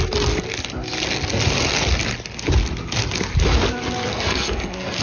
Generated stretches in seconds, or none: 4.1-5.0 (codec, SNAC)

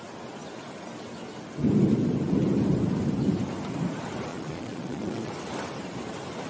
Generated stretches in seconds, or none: 4.3-5.3 (vocoder, Vocos)